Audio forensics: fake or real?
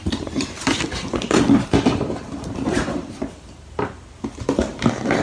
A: fake